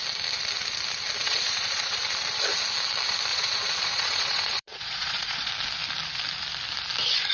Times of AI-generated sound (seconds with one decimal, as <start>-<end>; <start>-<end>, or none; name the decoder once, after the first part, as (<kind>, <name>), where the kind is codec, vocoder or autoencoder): 1.2-2.0 (vocoder, Vocos); 3.3-5.5